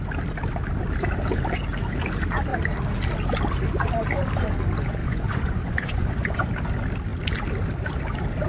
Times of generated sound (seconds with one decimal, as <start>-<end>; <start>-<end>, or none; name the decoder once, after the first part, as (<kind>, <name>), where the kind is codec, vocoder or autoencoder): 5.0-6.5 (vocoder, Vocos)